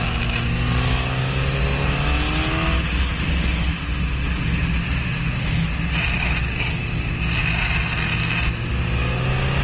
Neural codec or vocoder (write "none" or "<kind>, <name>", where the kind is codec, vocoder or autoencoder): none